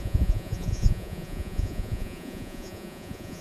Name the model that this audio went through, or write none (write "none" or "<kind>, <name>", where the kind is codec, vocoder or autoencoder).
vocoder, Vocos